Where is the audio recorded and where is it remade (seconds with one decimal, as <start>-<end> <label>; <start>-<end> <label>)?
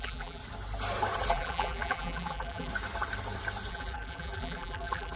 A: 0.0-0.4 remade; 0.4-1.3 recorded; 1.3-2.7 remade; 2.7-3.7 recorded; 3.7-5.2 remade